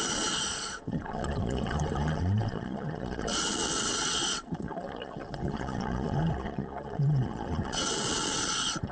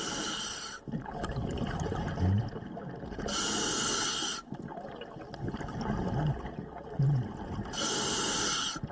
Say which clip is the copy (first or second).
first